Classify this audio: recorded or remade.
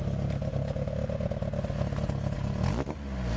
recorded